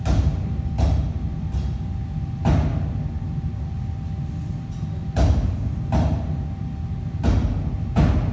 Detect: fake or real real